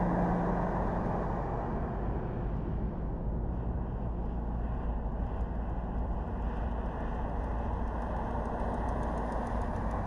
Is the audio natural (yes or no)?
yes